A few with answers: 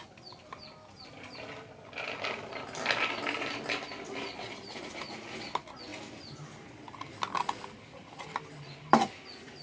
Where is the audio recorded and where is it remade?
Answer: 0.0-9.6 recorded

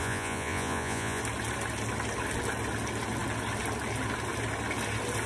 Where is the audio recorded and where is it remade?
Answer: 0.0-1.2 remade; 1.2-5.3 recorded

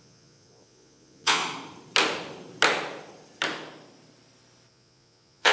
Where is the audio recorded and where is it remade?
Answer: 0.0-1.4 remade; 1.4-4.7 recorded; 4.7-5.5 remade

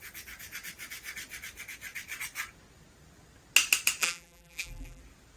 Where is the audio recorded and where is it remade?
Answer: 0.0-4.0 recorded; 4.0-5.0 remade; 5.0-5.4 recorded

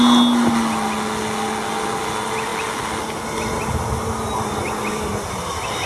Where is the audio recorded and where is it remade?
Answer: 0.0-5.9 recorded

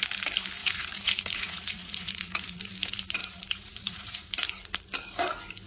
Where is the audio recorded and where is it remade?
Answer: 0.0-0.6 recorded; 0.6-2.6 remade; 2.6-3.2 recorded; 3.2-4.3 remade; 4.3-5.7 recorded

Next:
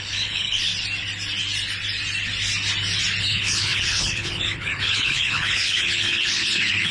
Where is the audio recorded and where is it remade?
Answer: 0.0-0.7 remade; 0.7-3.2 recorded; 3.2-6.9 remade